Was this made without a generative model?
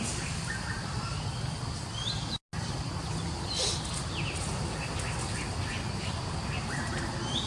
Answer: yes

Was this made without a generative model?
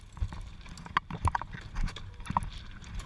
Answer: yes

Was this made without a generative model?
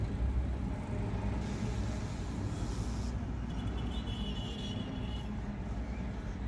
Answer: yes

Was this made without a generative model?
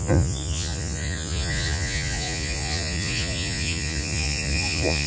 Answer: no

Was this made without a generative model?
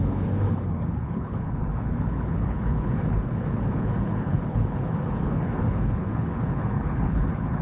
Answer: no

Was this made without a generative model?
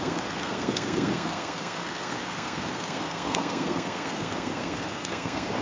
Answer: no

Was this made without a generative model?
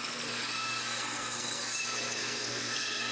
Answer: no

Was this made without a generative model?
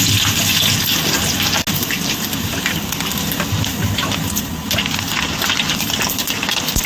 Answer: yes